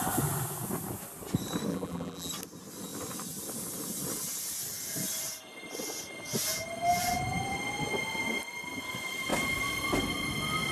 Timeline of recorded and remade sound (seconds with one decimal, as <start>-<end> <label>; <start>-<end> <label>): 0.0-1.7 recorded; 1.7-2.3 remade; 2.3-10.7 recorded

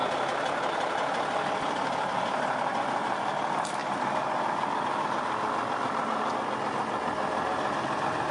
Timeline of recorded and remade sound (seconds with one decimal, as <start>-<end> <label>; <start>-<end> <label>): 0.0-8.3 recorded

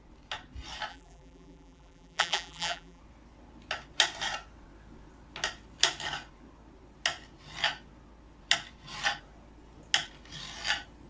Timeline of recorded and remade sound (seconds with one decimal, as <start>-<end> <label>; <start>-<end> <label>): 0.0-0.9 recorded; 0.9-3.0 remade; 3.0-11.1 recorded

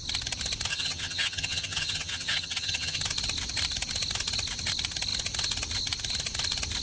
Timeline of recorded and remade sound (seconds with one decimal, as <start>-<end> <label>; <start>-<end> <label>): 0.0-0.7 recorded; 0.7-3.0 remade; 3.0-6.8 recorded

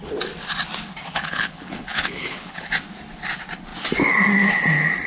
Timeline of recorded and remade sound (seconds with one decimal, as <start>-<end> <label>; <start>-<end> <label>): 0.0-1.1 recorded; 1.1-2.7 remade; 2.7-5.1 recorded

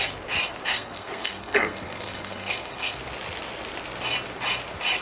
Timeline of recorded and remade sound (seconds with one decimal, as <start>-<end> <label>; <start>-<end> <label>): 0.0-0.7 recorded; 0.7-3.0 remade; 3.0-5.0 recorded

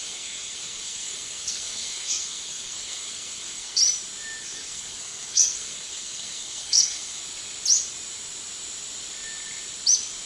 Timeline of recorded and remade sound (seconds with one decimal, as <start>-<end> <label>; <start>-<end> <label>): 0.0-3.8 remade; 3.8-4.4 recorded; 4.4-7.2 remade; 7.2-10.3 recorded